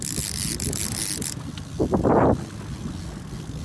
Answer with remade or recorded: recorded